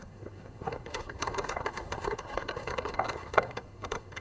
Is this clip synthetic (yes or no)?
yes